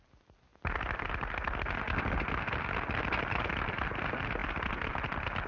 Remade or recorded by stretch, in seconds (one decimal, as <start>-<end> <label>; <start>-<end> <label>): 0.0-5.5 recorded